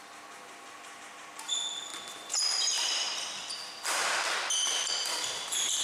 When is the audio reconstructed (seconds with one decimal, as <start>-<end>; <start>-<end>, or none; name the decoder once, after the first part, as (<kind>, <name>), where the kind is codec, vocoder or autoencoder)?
none